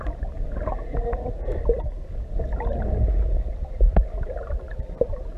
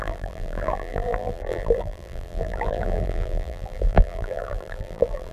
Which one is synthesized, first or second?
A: second